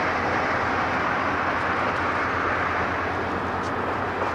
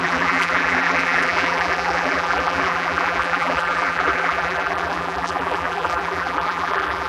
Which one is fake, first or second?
second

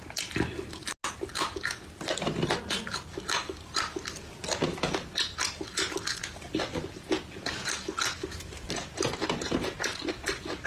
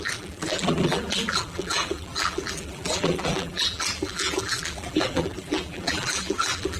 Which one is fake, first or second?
second